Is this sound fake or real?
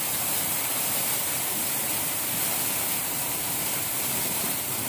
fake